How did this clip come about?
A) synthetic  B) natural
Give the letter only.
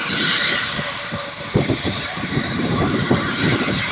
A